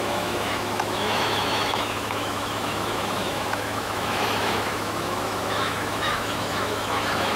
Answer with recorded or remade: remade